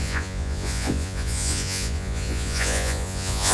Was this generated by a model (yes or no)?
yes